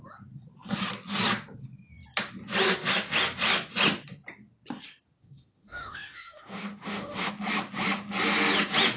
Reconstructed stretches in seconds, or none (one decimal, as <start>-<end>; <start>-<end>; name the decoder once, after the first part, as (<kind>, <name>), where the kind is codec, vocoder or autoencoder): 5.2-7.3 (autoencoder, DAC-VAE)